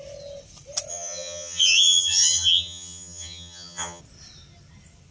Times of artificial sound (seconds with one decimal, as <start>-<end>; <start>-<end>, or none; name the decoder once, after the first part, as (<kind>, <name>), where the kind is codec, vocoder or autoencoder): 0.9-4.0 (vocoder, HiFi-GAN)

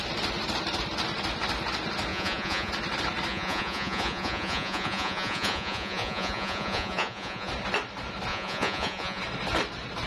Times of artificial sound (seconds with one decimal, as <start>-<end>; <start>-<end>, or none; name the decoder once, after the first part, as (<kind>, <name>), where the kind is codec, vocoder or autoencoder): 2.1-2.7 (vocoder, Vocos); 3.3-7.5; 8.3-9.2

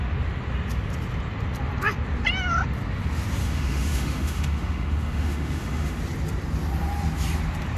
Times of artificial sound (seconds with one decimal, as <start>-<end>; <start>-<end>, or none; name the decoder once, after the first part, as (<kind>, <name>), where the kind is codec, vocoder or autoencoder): 3.4-6.0 (autoencoder, DAC-VAE)

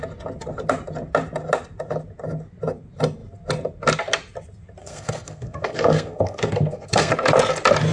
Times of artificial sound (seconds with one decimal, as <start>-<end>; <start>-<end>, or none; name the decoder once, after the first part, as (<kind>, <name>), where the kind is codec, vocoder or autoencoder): 4.8-7.1 (codec, SNAC)

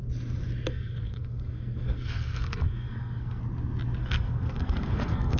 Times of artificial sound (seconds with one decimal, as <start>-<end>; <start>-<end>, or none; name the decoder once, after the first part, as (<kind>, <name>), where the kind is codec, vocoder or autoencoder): 0.7-3.4 (codec, SNAC); 4.0-5.4

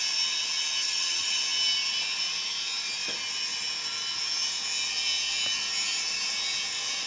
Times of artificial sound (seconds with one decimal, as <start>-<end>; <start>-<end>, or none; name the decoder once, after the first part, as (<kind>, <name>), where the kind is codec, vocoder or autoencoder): 0.8-1.4 (vocoder, HiFi-GAN)

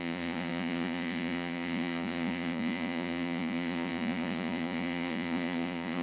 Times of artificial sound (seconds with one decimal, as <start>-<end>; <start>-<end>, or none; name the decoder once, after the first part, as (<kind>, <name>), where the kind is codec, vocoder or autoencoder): 0.0-6.0 (vocoder, Vocos)

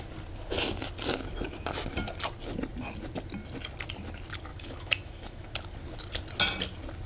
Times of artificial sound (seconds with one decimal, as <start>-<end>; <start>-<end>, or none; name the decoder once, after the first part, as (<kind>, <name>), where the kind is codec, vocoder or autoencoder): 4.5-5.5 (autoencoder, DAC-VAE)